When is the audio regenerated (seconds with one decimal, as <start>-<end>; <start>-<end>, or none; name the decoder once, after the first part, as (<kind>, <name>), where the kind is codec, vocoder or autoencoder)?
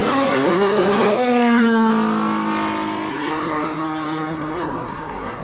0.0-1.9 (codec, SNAC); 3.1-5.4